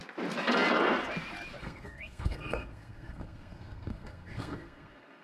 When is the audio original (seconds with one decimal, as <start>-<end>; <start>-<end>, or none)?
0.0-1.6